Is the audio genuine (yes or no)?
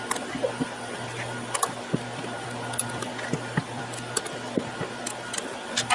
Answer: yes